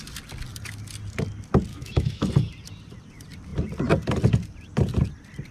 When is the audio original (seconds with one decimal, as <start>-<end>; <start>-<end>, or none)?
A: 0.0-1.7; 2.3-5.5